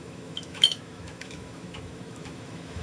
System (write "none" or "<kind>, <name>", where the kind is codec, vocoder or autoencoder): autoencoder, DAC-VAE